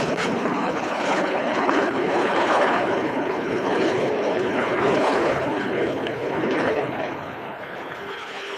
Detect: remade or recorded remade